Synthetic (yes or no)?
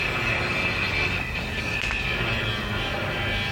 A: no